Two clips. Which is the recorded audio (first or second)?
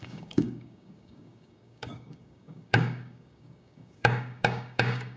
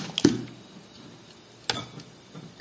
second